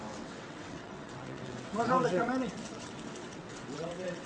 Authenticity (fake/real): fake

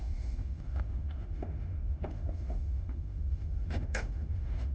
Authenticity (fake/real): fake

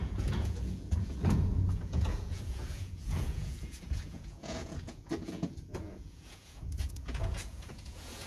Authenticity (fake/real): fake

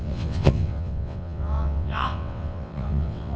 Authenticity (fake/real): fake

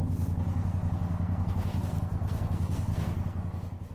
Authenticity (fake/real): fake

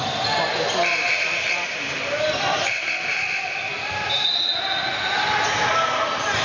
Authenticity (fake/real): real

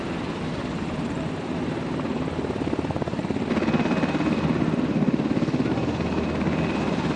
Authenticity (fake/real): real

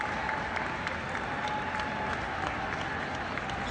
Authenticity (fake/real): real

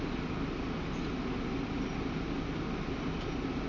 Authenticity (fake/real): real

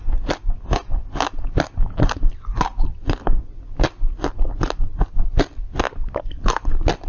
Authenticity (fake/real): real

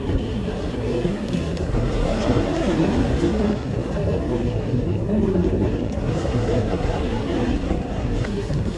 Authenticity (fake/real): fake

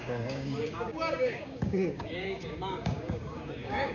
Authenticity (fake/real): fake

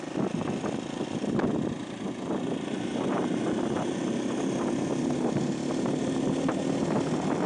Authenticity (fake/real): real